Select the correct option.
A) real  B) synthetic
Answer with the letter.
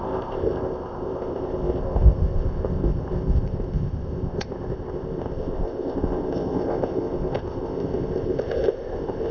B